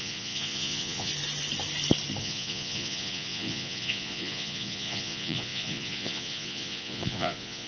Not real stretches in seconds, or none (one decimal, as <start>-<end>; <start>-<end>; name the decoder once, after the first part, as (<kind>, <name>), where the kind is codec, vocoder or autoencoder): 0.0-1.1 (vocoder, Vocos); 2.2-7.7